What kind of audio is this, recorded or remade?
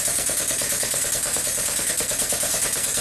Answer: remade